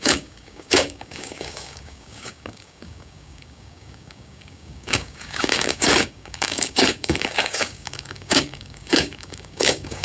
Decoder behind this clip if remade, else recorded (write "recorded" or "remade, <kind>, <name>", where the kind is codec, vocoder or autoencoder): remade, codec, DAC